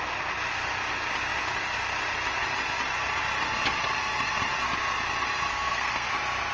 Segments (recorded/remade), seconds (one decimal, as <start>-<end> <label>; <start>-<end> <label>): 0.0-5.5 recorded; 5.5-6.1 remade; 6.1-6.5 recorded